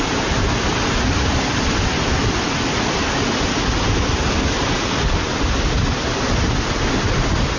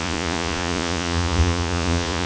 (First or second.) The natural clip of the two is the first